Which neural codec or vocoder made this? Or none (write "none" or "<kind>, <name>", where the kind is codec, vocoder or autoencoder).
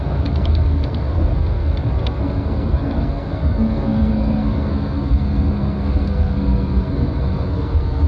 codec, SNAC